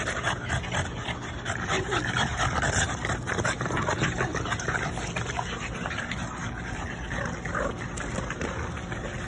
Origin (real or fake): real